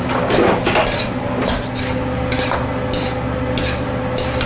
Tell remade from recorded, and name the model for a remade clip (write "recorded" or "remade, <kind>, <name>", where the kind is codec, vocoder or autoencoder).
recorded